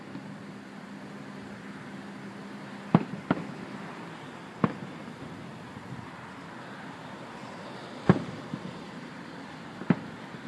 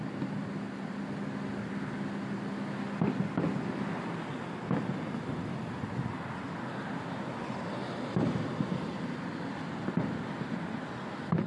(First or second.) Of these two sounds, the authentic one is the second